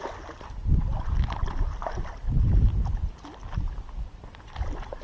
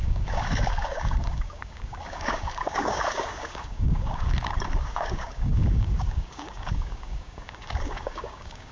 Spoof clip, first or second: second